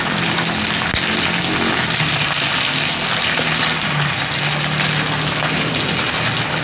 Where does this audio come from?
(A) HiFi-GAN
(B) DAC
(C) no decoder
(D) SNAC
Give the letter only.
C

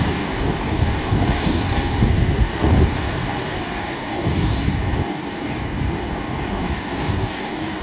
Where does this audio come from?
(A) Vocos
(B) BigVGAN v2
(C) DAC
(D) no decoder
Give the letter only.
C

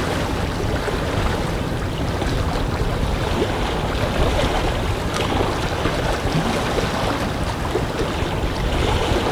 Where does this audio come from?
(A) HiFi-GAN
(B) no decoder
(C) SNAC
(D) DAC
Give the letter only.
B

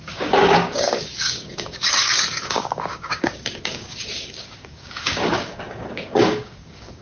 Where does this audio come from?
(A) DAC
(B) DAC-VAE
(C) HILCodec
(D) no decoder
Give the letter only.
A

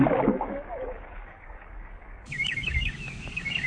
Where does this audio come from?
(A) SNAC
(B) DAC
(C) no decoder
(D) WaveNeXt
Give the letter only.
B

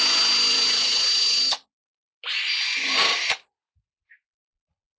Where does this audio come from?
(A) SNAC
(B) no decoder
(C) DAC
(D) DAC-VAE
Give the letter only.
B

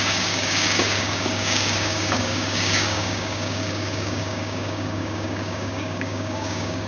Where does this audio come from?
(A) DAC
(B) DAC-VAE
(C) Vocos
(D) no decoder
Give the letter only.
A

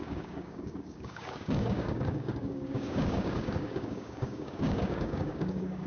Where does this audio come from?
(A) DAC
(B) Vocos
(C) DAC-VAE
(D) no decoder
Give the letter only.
A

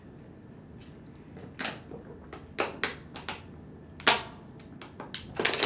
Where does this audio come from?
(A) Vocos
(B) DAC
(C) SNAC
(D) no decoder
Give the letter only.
D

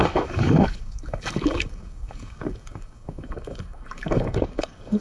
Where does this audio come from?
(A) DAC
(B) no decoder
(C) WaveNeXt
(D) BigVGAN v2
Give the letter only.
A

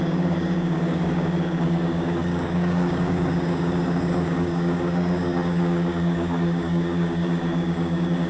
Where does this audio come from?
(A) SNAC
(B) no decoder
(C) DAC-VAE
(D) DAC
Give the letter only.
D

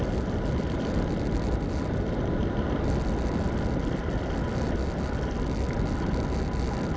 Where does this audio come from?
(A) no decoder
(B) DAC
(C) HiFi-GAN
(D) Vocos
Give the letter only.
A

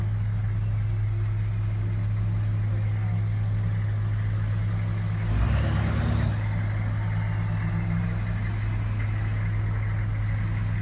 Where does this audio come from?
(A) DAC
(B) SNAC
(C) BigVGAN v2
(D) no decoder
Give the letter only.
D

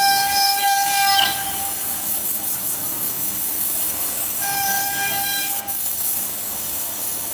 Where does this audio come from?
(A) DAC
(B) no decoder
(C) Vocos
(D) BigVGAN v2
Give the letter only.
A